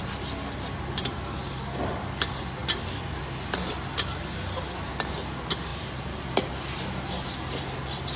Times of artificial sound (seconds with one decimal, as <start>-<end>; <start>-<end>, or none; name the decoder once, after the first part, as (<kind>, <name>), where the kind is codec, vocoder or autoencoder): none